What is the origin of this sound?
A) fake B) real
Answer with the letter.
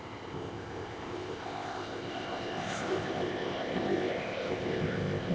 A